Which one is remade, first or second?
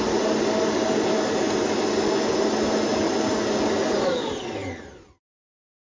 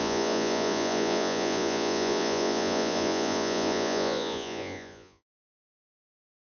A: second